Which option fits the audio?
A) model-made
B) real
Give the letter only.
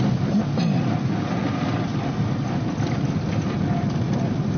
B